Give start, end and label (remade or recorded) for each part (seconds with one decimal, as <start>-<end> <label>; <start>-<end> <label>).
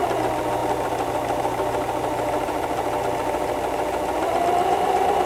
0.0-5.3 recorded